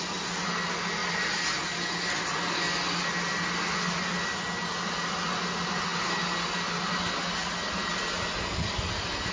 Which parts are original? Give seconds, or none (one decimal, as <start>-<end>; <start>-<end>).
0.0-9.3